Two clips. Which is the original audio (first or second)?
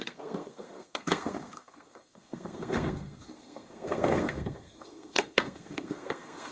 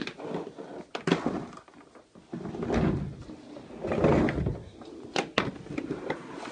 second